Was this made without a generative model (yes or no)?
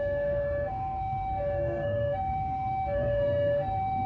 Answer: no